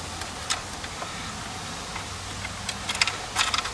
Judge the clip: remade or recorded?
recorded